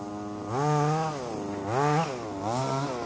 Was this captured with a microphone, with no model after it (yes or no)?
yes